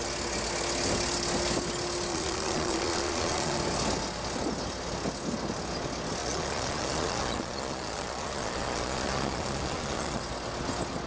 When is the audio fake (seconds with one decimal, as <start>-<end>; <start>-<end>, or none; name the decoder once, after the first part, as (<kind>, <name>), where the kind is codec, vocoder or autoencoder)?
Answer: 2.1-3.6 (vocoder, Vocos); 6.2-10.2